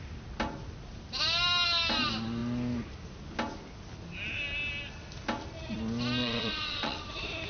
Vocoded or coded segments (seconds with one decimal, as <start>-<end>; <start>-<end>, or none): 6.2-7.0